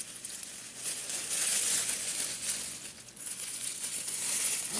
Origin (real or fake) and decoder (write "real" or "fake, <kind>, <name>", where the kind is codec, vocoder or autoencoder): fake, vocoder, Vocos